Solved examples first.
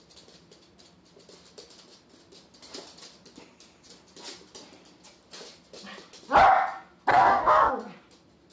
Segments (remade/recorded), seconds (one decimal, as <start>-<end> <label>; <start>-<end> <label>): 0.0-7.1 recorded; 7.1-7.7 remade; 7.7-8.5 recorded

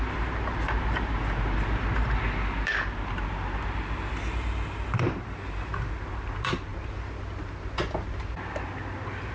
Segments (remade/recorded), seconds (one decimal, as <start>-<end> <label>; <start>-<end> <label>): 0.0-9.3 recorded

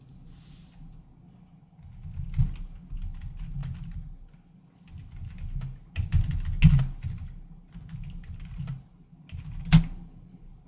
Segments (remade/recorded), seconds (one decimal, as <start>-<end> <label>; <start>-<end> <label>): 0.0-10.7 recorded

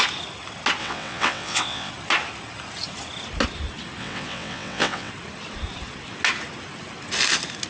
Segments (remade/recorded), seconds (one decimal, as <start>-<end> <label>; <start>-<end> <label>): 0.0-0.8 recorded; 0.8-1.9 remade; 1.9-4.0 recorded; 4.0-5.1 remade; 5.1-7.7 recorded

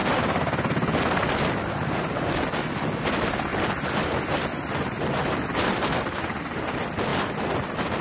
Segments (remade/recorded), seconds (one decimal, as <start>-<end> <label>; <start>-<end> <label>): 0.0-3.5 recorded; 3.5-6.4 remade; 6.4-8.0 recorded

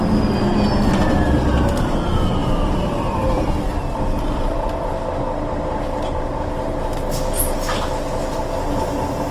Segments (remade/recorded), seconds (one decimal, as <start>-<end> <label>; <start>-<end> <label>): 0.0-2.4 recorded; 2.4-4.9 remade; 4.9-9.3 recorded